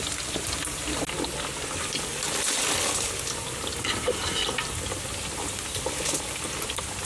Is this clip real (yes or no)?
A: yes